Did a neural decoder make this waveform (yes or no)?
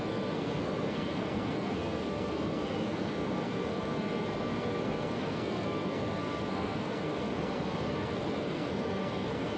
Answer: yes